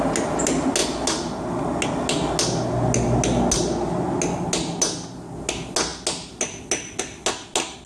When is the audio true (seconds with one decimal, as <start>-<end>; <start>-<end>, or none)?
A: 0.0-7.9